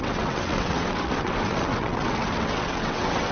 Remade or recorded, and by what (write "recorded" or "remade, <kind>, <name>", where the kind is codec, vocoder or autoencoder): remade, vocoder, WaveNeXt